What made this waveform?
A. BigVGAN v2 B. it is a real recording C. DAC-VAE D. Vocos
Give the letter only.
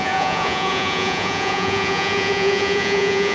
D